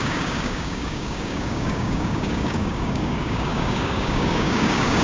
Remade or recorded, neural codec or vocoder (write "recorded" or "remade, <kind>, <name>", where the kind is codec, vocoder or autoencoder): remade, codec, DAC